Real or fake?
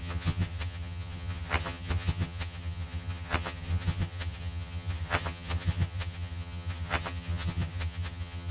fake